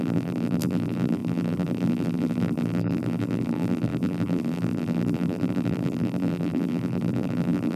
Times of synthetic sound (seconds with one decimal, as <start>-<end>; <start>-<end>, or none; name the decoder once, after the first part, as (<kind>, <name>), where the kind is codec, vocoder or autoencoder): 0.0-7.8 (vocoder, BigVGAN v2)